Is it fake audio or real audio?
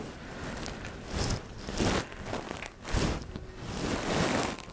real